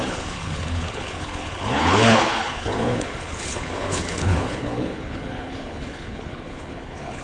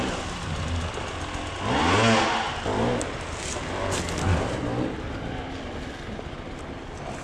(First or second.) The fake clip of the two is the first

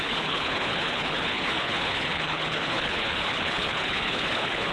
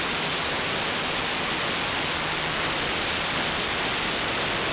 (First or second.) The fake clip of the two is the first